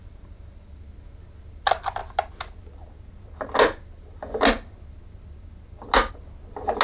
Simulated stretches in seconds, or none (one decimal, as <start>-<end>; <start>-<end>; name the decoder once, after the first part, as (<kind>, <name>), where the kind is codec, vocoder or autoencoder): none